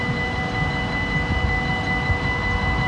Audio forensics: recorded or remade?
recorded